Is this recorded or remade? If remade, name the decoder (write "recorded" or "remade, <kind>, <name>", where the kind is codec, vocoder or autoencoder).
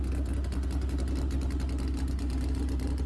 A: recorded